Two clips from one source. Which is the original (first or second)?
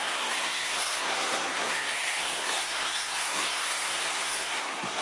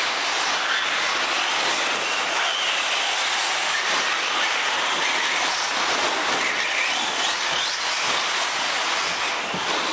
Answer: second